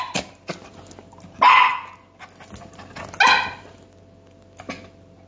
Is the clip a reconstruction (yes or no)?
no